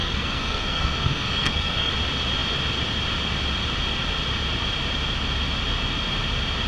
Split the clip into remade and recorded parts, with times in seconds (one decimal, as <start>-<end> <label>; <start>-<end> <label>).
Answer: 0.0-1.9 remade; 1.9-6.7 recorded